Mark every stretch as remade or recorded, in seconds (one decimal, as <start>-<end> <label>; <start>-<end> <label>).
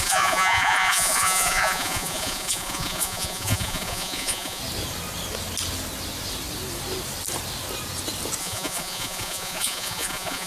0.0-4.6 remade; 4.6-8.4 recorded; 8.4-10.5 remade